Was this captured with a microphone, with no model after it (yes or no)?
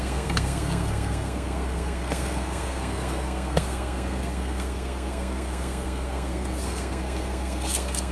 no